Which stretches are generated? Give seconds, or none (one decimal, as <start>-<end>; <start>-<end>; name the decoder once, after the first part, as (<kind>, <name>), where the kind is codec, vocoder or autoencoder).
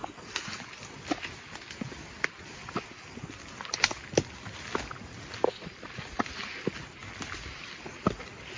none